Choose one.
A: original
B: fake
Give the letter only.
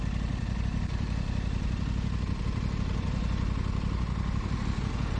A